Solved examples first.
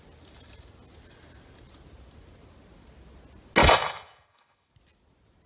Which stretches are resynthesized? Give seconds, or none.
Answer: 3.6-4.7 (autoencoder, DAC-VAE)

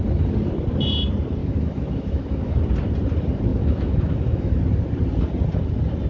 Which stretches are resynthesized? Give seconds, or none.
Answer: 1.4-2.6 (autoencoder, DAC-VAE); 3.5-4.6